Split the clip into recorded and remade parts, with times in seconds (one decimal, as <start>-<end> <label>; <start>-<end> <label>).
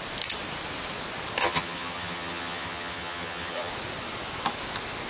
0.0-1.4 recorded; 1.4-3.7 remade; 3.7-5.1 recorded